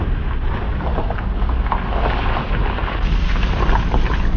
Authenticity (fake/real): real